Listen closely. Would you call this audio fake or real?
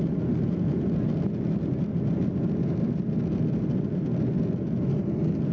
real